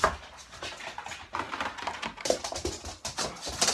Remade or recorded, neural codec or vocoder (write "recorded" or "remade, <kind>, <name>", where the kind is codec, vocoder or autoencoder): recorded